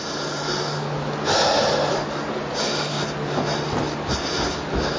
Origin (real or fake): real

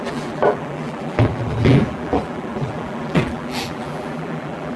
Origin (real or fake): fake